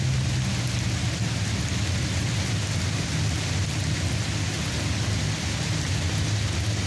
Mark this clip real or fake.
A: real